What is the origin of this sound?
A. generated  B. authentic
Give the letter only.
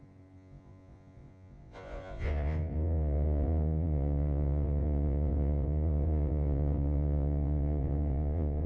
A